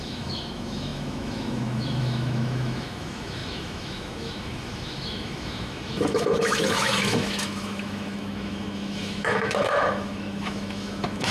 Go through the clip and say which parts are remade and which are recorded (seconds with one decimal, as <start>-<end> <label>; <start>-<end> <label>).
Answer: 0.0-11.3 remade

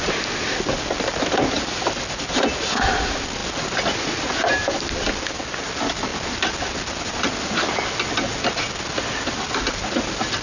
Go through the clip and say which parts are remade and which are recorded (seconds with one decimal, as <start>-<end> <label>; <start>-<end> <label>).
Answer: 0.0-10.4 recorded

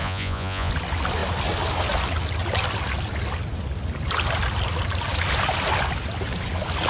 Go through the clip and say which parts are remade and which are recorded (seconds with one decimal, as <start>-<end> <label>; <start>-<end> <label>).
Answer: 0.0-0.7 remade; 0.7-6.9 recorded